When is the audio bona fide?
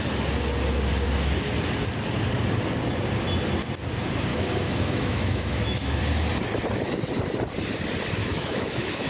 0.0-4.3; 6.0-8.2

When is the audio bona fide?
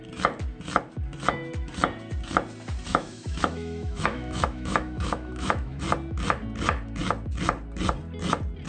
0.0-2.9; 5.8-8.7